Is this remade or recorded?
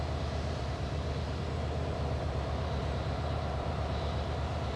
remade